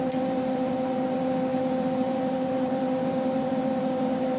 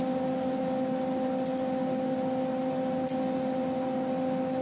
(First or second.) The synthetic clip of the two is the first